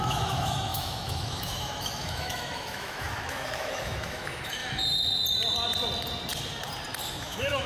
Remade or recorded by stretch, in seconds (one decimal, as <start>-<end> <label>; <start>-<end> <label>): 0.0-4.6 remade; 4.6-7.1 recorded; 7.1-7.7 remade